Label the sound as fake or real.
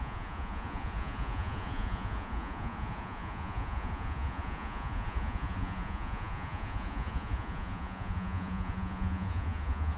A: fake